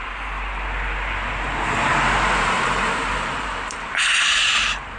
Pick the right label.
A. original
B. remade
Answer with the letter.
B